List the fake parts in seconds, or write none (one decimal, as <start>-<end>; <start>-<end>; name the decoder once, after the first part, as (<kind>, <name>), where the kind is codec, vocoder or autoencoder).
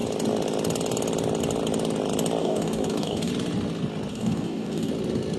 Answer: 2.4-3.3 (codec, DAC); 4.1-4.9